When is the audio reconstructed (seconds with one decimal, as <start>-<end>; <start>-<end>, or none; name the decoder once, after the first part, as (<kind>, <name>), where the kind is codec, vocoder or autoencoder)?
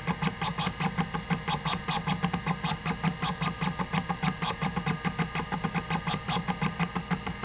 none